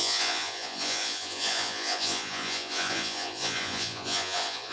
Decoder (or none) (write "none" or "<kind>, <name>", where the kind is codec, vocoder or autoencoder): vocoder, Vocos